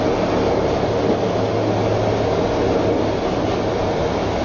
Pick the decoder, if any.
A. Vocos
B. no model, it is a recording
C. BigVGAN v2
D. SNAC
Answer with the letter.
B